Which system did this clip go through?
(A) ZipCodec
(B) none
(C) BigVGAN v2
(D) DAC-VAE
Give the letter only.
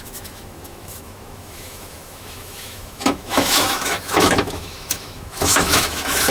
D